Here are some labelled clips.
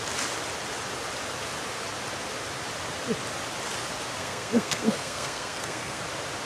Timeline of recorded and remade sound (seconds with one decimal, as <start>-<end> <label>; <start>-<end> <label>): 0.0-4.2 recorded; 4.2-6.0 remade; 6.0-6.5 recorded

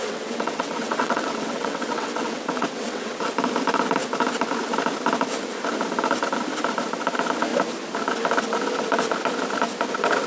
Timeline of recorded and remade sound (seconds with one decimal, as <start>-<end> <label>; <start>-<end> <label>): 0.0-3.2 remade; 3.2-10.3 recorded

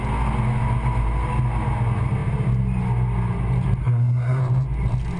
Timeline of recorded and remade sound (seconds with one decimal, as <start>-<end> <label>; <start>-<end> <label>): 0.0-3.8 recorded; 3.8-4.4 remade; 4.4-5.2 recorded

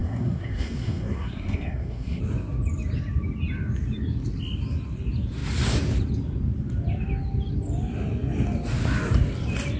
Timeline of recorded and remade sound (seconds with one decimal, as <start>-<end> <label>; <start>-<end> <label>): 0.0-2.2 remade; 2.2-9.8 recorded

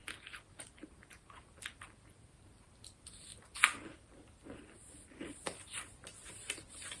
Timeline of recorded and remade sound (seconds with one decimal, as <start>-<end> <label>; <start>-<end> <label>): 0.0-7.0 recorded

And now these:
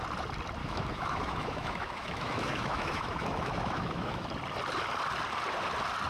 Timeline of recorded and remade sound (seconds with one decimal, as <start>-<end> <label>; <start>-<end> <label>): 0.0-0.6 recorded; 0.6-4.3 remade; 4.3-6.1 recorded